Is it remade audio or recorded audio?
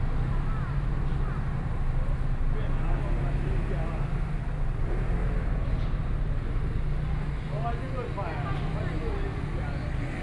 recorded